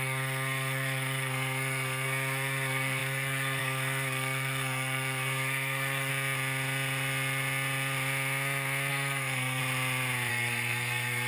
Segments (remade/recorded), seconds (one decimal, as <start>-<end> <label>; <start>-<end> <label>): 0.0-6.1 remade; 6.1-8.9 recorded; 8.9-9.6 remade; 9.6-10.3 recorded; 10.3-11.3 remade